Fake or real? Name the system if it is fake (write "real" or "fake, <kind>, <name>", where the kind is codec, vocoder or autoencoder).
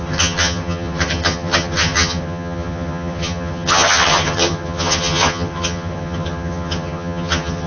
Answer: fake, vocoder, HiFi-GAN